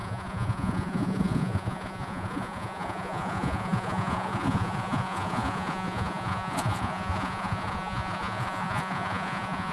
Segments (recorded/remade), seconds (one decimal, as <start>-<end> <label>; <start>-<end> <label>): 0.0-9.7 remade

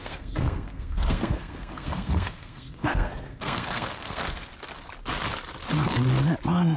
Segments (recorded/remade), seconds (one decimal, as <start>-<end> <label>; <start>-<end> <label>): 0.0-4.5 remade; 4.5-6.8 recorded

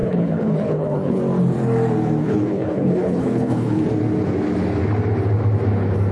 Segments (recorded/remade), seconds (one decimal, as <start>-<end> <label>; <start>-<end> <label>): 0.0-1.2 remade; 1.2-2.2 recorded; 2.2-3.8 remade; 3.8-6.1 recorded

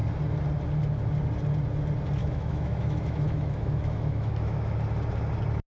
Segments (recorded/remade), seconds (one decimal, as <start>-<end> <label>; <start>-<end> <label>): 0.0-2.2 recorded; 2.2-4.7 remade; 4.7-5.7 recorded

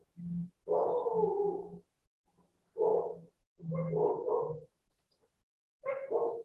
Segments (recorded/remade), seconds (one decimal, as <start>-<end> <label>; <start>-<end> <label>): 0.0-2.9 recorded; 2.9-3.7 remade; 3.7-6.4 recorded